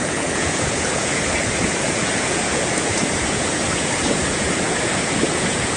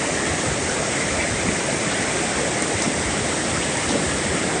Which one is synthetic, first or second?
first